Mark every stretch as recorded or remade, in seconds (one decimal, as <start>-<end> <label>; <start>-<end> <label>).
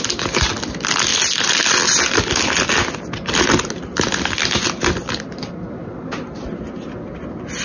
0.0-7.6 recorded